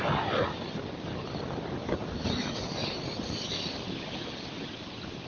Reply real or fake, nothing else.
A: real